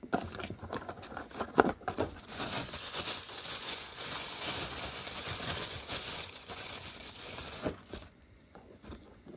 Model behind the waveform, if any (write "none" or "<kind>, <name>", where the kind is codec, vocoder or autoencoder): vocoder, Vocos